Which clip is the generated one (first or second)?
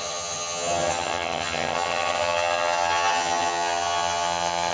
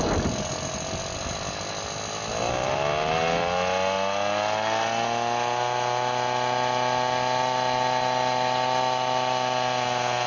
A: first